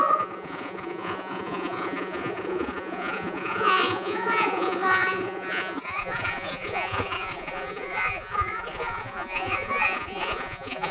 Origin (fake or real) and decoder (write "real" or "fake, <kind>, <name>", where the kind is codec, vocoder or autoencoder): fake, vocoder, Vocos